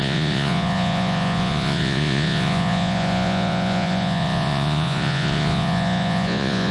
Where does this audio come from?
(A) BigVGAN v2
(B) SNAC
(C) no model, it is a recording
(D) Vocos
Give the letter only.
D